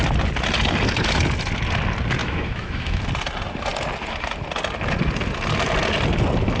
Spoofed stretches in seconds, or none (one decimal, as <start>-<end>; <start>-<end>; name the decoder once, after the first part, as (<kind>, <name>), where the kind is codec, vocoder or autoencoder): 2.2-3.0 (autoencoder, DAC-VAE)